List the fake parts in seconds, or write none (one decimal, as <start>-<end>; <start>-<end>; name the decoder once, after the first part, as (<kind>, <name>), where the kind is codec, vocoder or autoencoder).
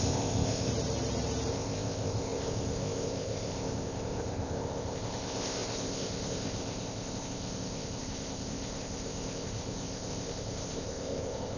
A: 0.0-0.7 (codec, ZipCodec); 1.5-11.6